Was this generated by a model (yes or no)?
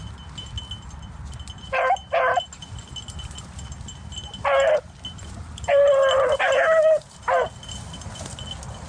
no